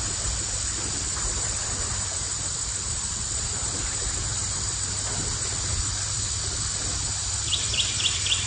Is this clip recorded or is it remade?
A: remade